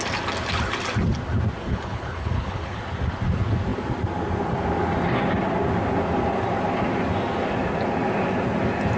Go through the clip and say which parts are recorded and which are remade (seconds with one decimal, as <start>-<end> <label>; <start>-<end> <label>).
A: 0.0-1.6 recorded; 1.6-2.8 remade; 2.8-9.0 recorded